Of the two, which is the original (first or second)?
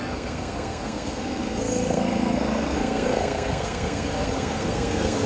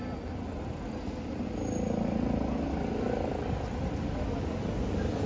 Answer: second